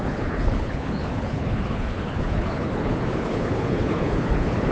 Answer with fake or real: fake